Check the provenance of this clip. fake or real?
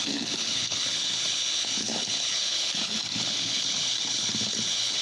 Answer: fake